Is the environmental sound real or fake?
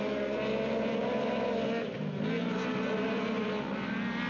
real